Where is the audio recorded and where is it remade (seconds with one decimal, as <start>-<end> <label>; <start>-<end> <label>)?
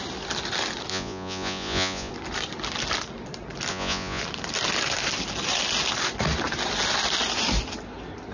0.0-0.9 recorded; 0.9-2.1 remade; 2.1-3.7 recorded; 3.7-4.2 remade; 4.2-8.3 recorded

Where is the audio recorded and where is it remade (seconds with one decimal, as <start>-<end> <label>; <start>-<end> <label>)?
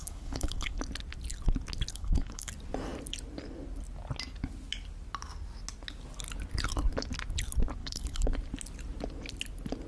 0.0-0.8 remade; 0.8-1.9 recorded; 1.9-2.5 remade; 2.5-7.8 recorded; 7.8-8.3 remade; 8.3-9.9 recorded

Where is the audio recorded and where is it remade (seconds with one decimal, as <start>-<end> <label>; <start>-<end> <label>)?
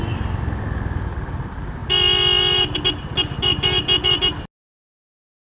0.0-5.4 recorded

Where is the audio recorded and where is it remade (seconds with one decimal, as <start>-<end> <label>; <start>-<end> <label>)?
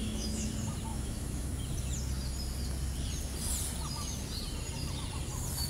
0.0-0.5 remade; 0.5-0.9 recorded; 0.9-1.5 remade; 1.5-5.7 recorded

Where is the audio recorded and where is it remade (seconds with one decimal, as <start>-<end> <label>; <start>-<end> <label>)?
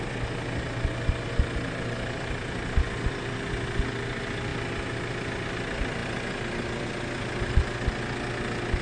0.0-8.8 recorded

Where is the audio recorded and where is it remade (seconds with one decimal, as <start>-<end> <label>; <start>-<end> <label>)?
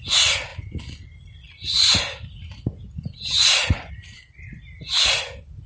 0.0-5.7 recorded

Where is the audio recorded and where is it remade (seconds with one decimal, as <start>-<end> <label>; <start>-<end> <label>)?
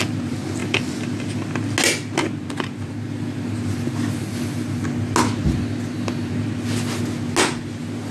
0.0-8.1 recorded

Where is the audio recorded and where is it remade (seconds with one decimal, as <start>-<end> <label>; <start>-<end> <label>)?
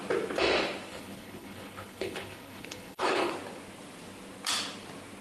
0.0-0.9 recorded; 0.9-3.3 remade; 3.3-5.2 recorded